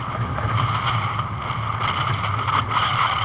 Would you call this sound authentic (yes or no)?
yes